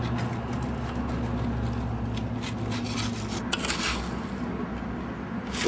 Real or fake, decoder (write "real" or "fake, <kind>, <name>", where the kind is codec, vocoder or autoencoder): real